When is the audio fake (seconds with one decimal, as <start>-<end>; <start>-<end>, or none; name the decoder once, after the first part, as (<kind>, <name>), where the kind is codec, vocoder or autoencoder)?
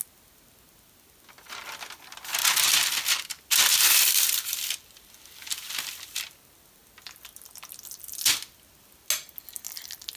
2.4-5.7 (vocoder, BigVGAN v2)